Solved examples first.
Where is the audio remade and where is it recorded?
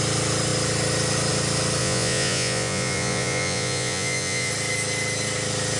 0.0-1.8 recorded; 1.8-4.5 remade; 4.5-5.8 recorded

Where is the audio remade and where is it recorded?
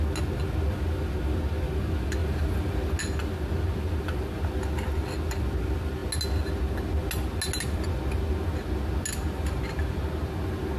0.0-10.8 recorded